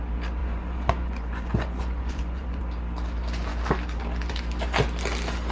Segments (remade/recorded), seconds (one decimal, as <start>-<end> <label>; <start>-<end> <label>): 0.0-0.4 recorded; 0.4-2.6 remade; 2.6-5.5 recorded